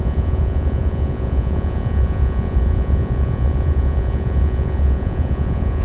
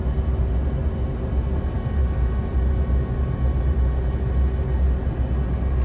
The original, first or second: second